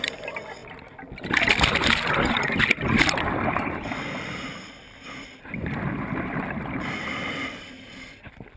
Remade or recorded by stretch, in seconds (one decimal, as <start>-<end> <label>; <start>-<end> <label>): 0.0-8.6 recorded